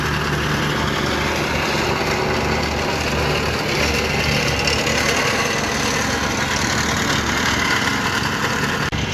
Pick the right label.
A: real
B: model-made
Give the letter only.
A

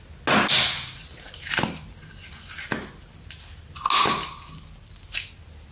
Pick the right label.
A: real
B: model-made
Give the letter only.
A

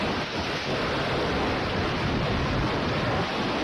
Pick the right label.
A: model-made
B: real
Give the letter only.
B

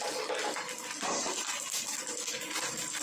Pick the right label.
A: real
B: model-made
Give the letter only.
A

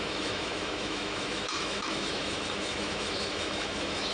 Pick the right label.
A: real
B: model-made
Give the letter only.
B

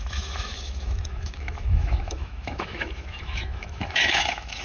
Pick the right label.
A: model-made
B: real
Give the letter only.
A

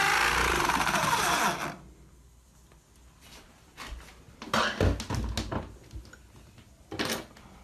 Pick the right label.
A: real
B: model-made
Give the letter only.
A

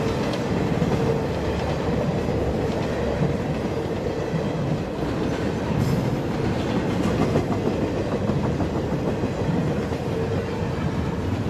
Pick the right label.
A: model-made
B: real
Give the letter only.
B